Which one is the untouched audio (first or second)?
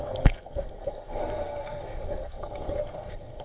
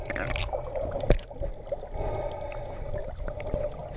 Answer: second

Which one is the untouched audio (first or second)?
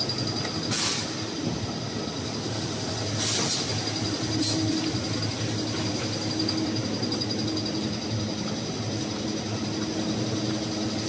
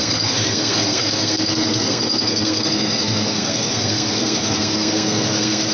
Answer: first